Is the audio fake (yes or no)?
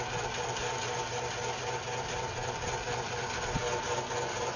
no